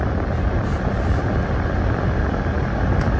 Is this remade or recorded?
recorded